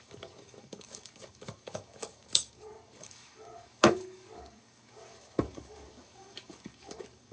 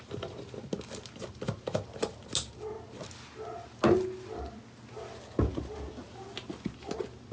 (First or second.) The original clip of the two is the second